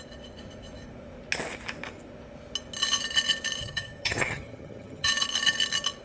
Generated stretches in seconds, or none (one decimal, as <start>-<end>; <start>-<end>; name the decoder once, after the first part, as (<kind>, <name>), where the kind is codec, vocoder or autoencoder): 3.6-5.1 (vocoder, HiFi-GAN)